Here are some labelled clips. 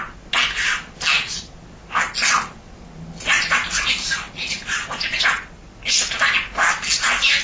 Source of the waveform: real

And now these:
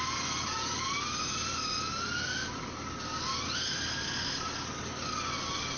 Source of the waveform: real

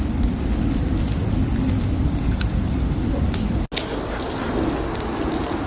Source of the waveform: real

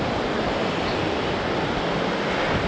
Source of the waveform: real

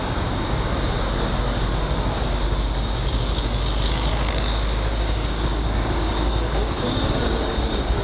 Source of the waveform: fake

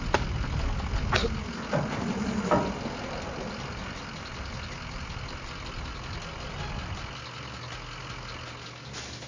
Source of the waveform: real